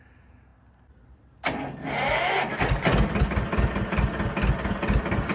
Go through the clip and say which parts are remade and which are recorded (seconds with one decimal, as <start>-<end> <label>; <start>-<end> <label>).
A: 0.0-5.3 recorded